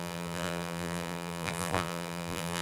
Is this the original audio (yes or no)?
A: no